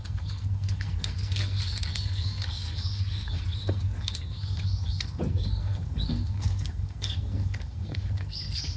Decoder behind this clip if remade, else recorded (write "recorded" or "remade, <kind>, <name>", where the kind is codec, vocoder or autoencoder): remade, codec, SNAC